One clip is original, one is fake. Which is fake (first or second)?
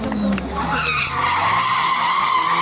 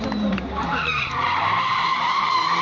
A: second